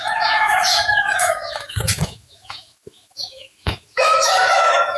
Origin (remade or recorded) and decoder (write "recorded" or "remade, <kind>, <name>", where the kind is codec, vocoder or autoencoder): remade, autoencoder, DAC-VAE